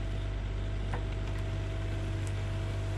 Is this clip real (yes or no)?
yes